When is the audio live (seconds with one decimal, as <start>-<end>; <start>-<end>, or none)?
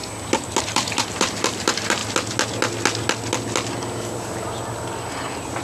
0.0-0.6; 2.0-5.6